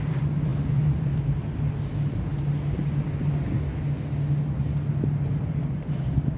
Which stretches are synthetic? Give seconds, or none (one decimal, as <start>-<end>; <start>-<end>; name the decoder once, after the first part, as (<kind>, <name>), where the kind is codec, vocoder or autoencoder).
none